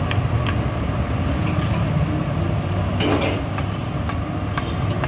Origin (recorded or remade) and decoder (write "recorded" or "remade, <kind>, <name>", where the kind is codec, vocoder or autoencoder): recorded